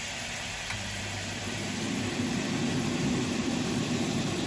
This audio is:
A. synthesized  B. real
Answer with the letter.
A